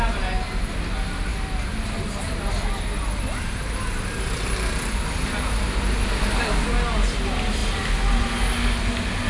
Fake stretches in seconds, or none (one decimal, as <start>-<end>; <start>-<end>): none